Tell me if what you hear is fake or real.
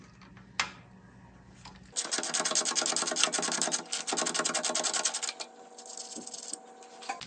real